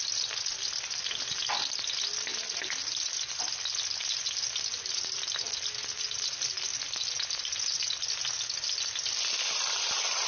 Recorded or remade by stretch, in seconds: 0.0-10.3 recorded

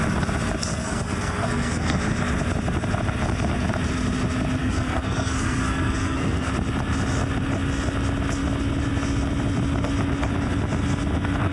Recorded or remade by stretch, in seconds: 0.0-0.6 recorded; 0.6-2.0 remade; 2.0-4.6 recorded; 4.6-6.5 remade; 6.5-11.5 recorded

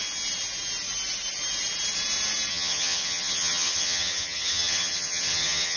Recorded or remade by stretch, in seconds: 0.0-2.5 recorded; 2.5-5.8 remade

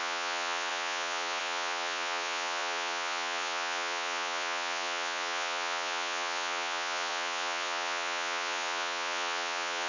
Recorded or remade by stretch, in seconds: 0.0-9.9 remade

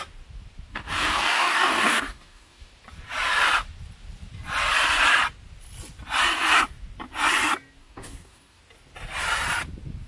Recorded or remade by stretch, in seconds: 0.0-0.7 recorded; 0.7-2.7 remade; 2.7-7.8 recorded; 7.8-8.6 remade; 8.6-10.1 recorded